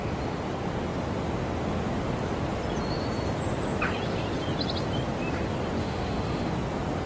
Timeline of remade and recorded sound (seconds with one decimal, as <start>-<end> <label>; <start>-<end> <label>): 0.0-5.8 recorded; 5.8-6.5 remade; 6.5-7.1 recorded